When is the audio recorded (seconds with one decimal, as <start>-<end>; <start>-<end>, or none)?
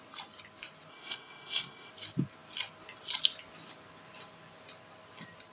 0.0-0.9; 1.9-5.5